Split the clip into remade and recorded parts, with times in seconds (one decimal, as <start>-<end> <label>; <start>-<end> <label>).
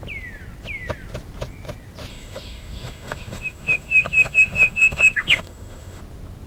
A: 0.0-2.1 recorded; 2.1-6.0 remade; 6.0-6.5 recorded